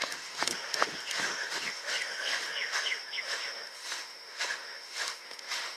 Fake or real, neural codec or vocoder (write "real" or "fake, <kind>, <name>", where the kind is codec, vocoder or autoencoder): fake, autoencoder, DAC-VAE